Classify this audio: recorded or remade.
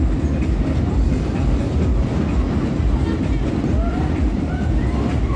recorded